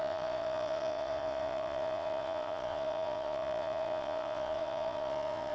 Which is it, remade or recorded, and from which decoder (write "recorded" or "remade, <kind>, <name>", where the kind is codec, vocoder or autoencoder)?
remade, vocoder, Vocos